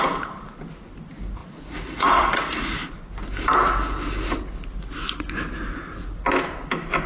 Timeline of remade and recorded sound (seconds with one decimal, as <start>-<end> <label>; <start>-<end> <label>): 0.0-1.4 recorded; 1.4-2.5 remade; 2.5-7.1 recorded